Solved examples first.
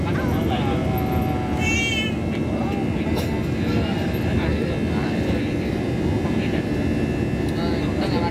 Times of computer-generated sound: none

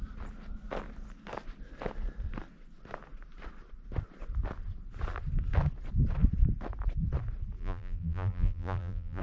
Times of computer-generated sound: 7.6-9.2 (vocoder, BigVGAN v2)

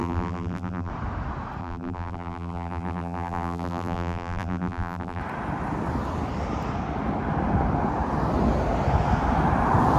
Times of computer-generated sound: 0.0-0.9 (vocoder, BigVGAN v2); 1.6-5.2

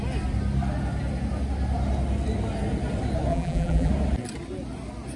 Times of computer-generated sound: 3.3-3.9 (vocoder, BigVGAN v2)